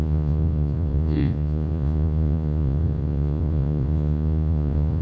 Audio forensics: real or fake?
fake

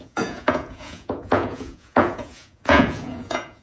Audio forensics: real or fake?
fake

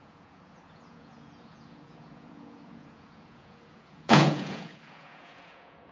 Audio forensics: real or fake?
fake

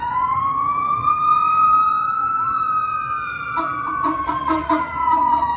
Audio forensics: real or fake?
fake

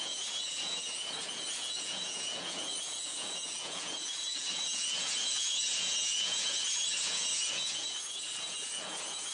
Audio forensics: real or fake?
fake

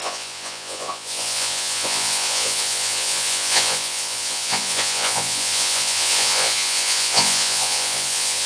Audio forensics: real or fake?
fake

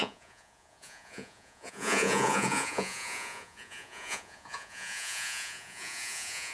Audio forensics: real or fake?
fake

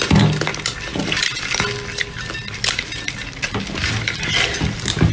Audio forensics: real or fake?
real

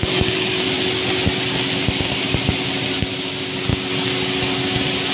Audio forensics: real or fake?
real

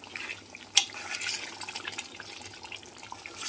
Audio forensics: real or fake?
real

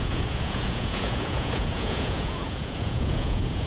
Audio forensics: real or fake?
fake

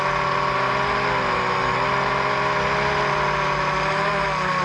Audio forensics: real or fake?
real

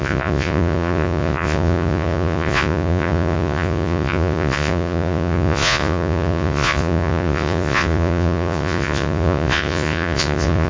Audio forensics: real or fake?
fake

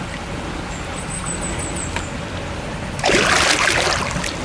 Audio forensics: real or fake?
real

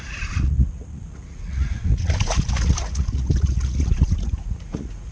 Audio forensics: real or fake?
fake